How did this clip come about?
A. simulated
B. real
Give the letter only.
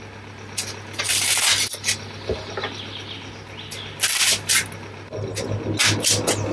B